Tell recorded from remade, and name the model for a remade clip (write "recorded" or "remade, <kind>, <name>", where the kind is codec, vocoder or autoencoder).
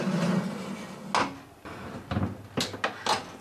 recorded